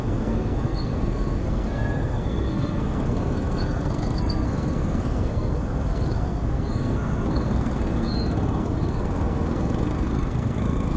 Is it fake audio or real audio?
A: fake